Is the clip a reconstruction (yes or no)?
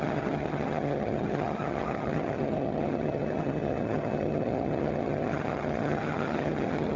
yes